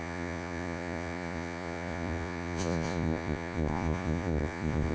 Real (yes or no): no